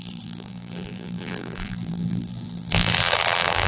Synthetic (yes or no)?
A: yes